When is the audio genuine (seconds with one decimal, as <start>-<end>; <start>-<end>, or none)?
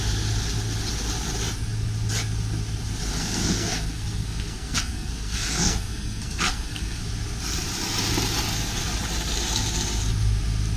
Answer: 0.0-3.2; 7.0-10.8